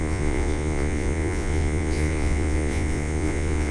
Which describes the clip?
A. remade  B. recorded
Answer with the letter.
A